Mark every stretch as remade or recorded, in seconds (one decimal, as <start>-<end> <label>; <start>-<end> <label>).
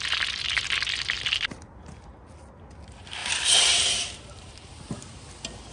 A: 0.0-3.2 recorded; 3.2-4.7 remade; 4.7-5.7 recorded